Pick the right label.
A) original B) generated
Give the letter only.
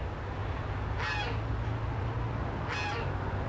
A